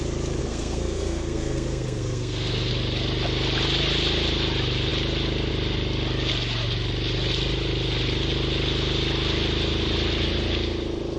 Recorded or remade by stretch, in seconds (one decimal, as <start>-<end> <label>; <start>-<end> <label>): 0.0-0.4 recorded; 0.4-2.7 remade; 2.7-11.2 recorded